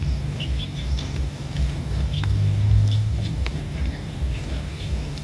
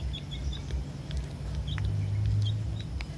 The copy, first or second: first